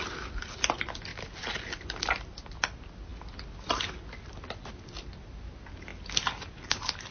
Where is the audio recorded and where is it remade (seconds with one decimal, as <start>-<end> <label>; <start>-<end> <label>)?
0.0-7.1 recorded